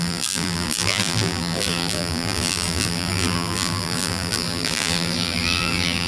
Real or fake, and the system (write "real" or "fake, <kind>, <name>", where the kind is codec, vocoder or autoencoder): fake, vocoder, BigVGAN v2